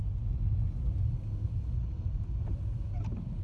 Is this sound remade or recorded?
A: recorded